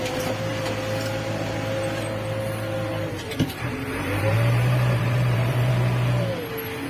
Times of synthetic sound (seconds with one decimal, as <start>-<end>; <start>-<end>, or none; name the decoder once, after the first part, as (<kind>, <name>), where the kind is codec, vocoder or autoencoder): 2.9-5.7 (vocoder, BigVGAN v2)